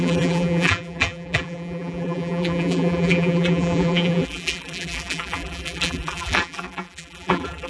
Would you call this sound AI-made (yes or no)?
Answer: yes